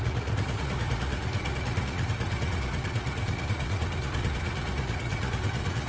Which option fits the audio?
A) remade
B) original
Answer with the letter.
A